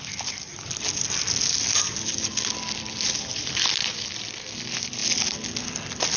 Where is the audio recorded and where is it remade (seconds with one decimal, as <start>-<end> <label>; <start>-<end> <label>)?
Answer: 0.0-6.2 recorded